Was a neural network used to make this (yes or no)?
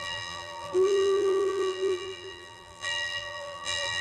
yes